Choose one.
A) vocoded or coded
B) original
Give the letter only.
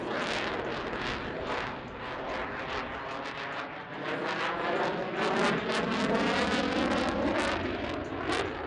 B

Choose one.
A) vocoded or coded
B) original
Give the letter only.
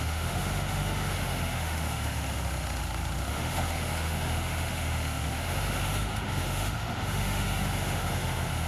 A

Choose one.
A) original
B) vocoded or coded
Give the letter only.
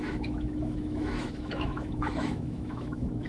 B